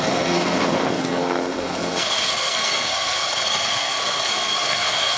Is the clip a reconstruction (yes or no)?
yes